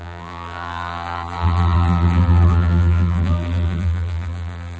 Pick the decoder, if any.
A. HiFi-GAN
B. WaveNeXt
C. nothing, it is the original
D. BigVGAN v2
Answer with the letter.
D